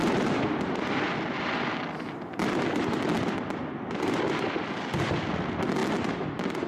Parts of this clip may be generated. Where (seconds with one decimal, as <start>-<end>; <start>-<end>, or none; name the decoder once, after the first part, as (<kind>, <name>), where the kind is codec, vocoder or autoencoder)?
none